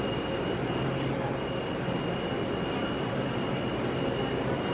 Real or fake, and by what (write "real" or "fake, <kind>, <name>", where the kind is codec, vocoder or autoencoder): real